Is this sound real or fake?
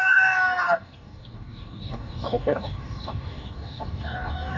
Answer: fake